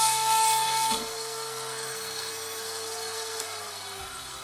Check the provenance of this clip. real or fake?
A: fake